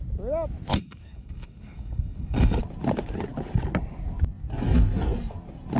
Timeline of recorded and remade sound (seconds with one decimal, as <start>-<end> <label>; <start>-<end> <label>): 0.0-0.7 recorded; 0.7-2.6 remade; 2.6-5.8 recorded